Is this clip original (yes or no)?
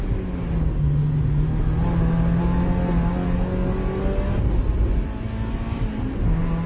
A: yes